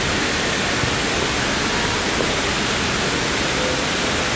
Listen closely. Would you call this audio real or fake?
real